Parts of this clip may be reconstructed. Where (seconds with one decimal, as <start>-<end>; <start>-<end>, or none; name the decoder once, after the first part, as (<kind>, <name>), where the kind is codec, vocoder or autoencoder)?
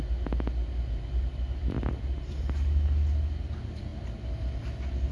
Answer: none